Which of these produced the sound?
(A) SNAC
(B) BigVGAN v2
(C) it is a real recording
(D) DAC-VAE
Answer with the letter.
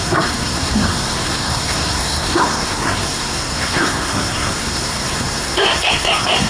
A